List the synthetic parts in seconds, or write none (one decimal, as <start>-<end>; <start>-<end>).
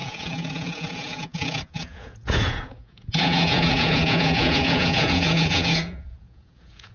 0.0-6.9